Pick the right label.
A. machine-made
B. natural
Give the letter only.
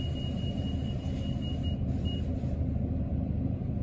B